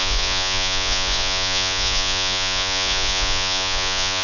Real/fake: fake